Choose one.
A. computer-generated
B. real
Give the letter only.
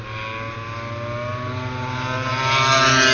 B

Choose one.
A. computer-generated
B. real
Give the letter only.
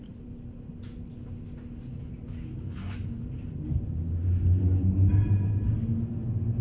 B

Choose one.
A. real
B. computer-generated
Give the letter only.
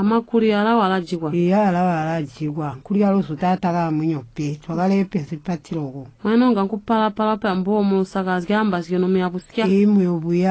A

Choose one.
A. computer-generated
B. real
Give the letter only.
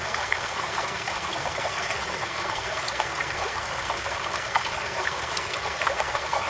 A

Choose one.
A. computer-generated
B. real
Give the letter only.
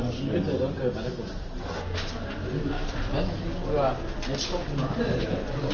B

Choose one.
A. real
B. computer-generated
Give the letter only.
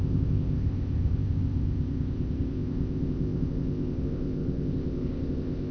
B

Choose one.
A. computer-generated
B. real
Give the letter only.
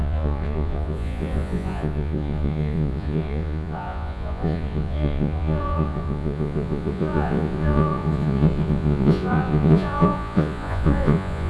A